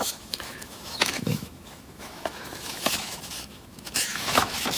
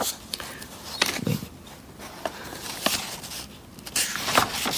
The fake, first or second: first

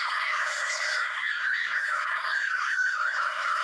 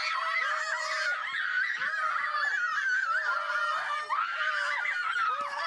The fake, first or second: first